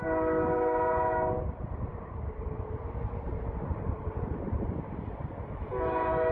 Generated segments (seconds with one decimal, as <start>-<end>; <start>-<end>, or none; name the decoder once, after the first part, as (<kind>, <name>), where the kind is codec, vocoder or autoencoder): 5.7-6.3 (autoencoder, DAC-VAE)